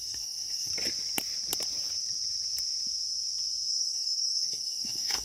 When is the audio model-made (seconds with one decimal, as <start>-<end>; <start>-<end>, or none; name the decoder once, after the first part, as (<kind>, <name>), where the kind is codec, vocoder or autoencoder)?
0.0-0.7 (codec, DAC); 3.7-5.2